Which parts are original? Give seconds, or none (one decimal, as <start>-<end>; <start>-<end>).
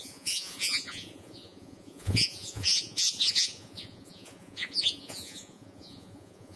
none